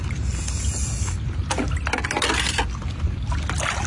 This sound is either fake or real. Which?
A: real